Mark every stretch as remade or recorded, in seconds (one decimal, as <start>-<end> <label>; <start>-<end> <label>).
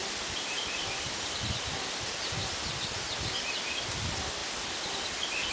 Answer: 0.0-5.5 recorded